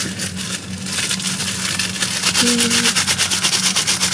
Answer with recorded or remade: recorded